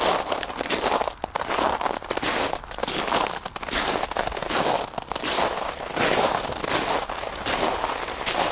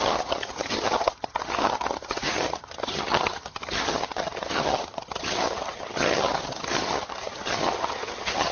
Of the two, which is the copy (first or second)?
second